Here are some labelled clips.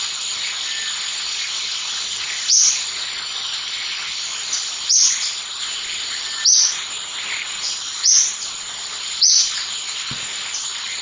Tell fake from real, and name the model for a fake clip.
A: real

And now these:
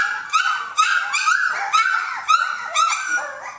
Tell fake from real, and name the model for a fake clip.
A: real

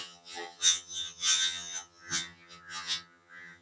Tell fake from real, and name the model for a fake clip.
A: fake, vocoder, HiFi-GAN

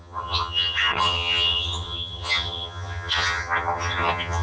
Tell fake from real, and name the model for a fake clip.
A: fake, vocoder, HiFi-GAN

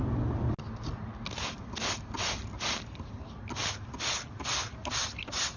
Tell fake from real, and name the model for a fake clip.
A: real